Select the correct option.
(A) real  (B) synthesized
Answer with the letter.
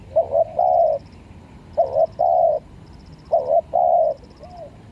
A